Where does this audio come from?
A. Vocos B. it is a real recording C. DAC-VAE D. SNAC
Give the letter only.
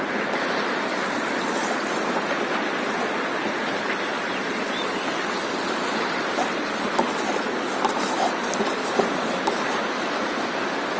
B